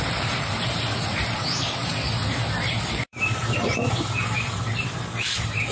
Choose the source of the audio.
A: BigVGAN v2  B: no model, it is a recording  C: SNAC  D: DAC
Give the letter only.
A